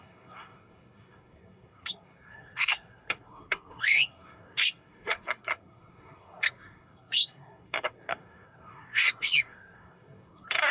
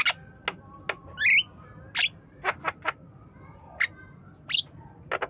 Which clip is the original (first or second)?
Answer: second